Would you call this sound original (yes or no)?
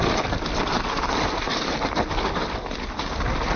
yes